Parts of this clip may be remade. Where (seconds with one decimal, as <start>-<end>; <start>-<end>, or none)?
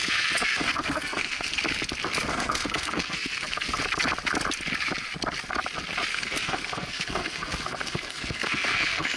0.0-1.5; 2.3-3.8; 6.1-9.2